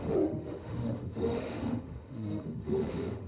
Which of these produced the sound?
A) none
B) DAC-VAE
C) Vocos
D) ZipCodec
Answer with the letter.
B